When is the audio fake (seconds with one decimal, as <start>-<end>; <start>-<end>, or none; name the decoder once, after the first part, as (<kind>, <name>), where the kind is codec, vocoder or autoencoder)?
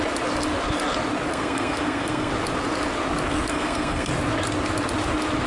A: 1.3-2.3 (codec, SNAC); 3.5-4.1